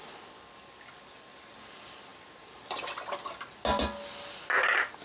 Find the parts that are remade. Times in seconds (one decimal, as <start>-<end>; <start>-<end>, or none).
none